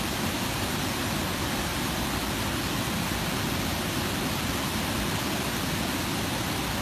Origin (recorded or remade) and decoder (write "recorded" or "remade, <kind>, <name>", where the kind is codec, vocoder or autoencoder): recorded